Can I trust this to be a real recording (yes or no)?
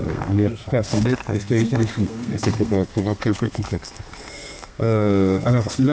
no